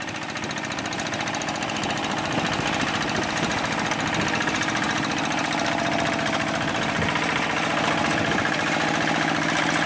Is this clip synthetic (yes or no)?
no